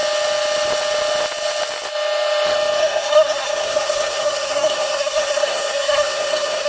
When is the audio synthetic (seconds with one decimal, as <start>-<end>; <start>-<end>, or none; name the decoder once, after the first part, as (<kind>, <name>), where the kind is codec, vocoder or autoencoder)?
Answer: 2.8-6.7 (codec, SNAC)